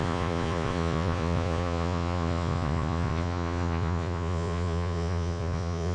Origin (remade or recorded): remade